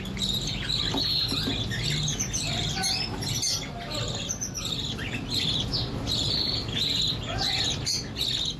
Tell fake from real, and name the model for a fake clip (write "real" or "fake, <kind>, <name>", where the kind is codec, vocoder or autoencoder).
real